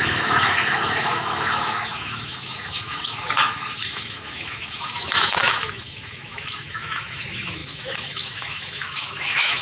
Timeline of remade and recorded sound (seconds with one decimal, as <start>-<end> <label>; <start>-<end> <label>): 0.0-9.6 remade